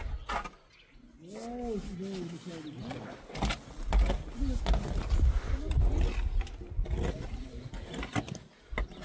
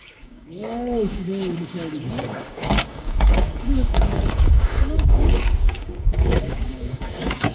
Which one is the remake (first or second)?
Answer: second